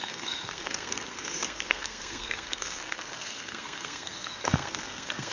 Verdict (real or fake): fake